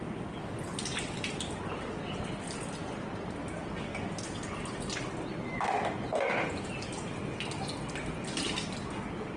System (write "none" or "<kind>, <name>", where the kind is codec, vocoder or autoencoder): none